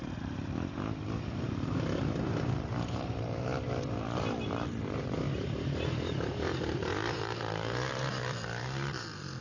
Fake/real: fake